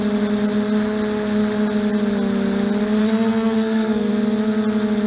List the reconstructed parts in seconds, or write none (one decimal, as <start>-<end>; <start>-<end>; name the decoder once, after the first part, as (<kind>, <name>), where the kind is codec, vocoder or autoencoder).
3.0-4.1 (codec, SNAC)